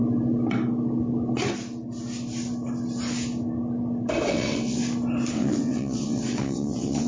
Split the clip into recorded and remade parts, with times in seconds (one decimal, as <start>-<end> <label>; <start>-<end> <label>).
0.0-4.3 recorded; 4.3-4.8 remade; 4.8-5.3 recorded; 5.3-7.1 remade